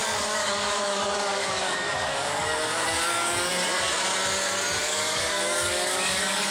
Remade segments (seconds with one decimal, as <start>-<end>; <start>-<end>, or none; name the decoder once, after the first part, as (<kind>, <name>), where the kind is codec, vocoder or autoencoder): 0.0-3.5 (codec, DAC); 4.8-6.5